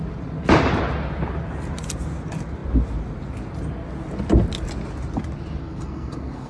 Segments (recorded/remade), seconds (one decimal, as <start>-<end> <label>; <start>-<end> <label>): 0.0-5.6 recorded; 5.6-6.5 remade